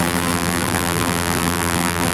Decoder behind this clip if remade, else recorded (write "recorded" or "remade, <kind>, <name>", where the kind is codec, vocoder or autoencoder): remade, vocoder, BigVGAN v2